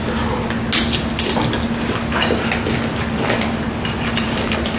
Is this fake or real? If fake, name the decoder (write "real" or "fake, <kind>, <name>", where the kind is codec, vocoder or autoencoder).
real